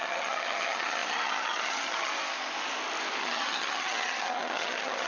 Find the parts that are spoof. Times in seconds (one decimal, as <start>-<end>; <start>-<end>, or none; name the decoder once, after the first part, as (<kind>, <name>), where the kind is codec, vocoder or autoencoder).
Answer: 0.0-2.1 (vocoder, HiFi-GAN); 3.2-5.1

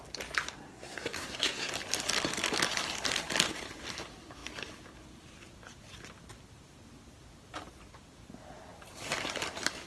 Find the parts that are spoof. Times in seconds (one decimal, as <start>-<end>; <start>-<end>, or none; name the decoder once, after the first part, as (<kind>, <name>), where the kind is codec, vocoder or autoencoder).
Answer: 0.7-1.7 (codec, SNAC)

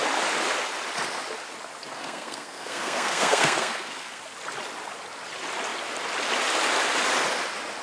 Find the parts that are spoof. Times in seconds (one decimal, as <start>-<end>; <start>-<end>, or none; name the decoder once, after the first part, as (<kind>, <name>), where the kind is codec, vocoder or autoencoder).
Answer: 1.9-4.2 (codec, SNAC)